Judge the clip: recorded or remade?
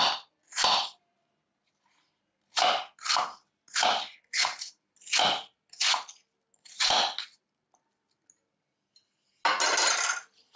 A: recorded